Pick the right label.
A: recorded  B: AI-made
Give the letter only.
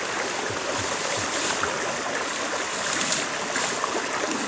A